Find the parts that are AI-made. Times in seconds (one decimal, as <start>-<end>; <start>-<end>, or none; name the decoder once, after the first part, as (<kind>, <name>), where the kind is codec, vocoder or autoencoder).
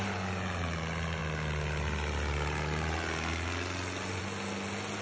none